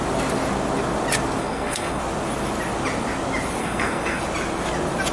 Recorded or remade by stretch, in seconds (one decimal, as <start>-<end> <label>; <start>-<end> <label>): 0.0-1.4 recorded; 1.4-2.0 remade; 2.0-3.6 recorded; 3.6-4.2 remade; 4.2-5.1 recorded